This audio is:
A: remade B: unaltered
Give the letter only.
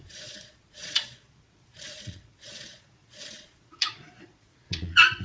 A